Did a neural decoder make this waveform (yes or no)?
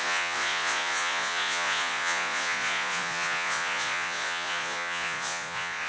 yes